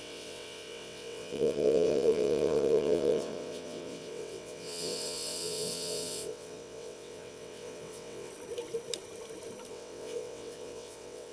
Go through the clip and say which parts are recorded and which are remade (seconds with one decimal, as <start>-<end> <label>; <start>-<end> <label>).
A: 0.0-8.3 remade; 8.3-9.7 recorded; 9.7-11.3 remade